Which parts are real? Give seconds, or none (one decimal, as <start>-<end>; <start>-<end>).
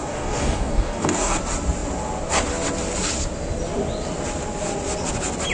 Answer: 1.4-5.5